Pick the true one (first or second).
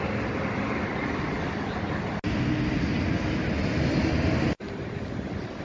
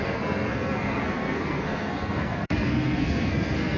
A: first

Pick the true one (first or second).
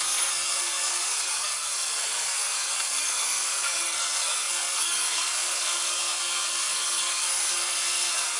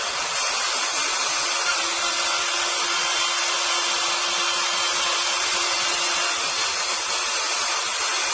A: second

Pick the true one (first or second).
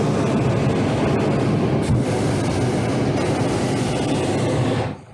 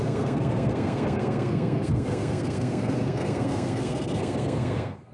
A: first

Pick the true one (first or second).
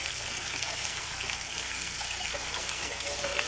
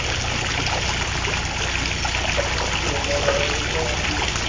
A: second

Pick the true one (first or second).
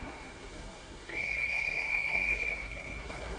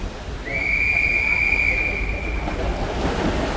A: second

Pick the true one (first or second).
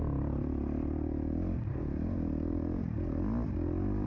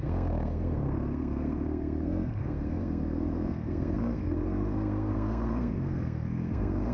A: first